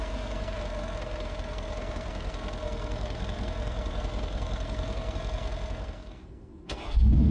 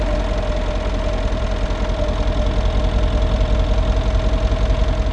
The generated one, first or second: first